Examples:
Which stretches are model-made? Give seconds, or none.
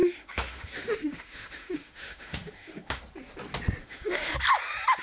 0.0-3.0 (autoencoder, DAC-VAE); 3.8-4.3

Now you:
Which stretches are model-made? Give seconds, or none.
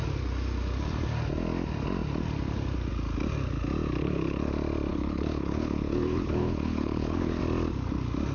4.0-4.5 (codec, HILCodec); 4.9-7.4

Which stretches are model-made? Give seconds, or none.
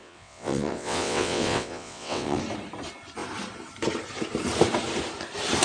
0.0-2.4 (vocoder, WaveNeXt)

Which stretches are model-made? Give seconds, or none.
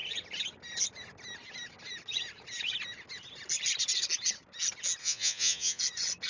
5.0-5.8 (vocoder, Vocos)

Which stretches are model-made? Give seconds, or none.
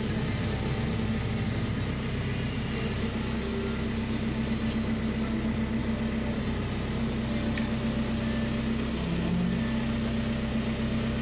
none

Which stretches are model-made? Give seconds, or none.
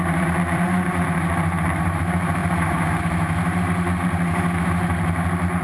0.0-5.6 (vocoder, BigVGAN v2)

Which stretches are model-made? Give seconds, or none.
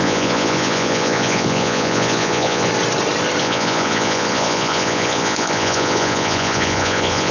0.0-2.7 (vocoder, Vocos); 3.4-7.3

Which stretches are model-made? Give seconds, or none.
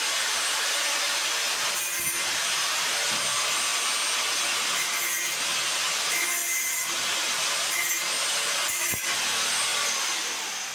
9.7-10.2 (vocoder, BigVGAN v2)